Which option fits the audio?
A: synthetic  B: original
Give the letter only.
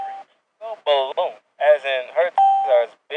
B